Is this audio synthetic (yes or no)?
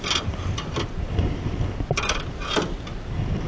no